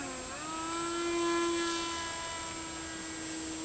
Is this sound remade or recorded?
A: recorded